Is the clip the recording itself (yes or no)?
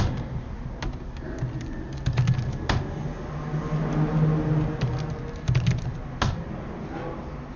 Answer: yes